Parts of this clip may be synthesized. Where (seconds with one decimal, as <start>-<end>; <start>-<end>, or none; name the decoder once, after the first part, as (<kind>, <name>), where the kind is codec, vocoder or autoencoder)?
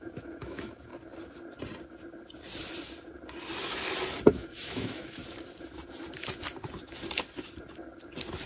0.0-0.9 (autoencoder, DAC-VAE); 4.3-5.2